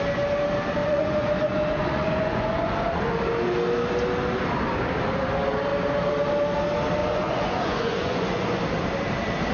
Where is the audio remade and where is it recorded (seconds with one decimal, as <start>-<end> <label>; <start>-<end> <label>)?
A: 0.0-0.8 recorded; 0.8-3.1 remade; 3.1-7.0 recorded; 7.0-8.6 remade; 8.6-9.5 recorded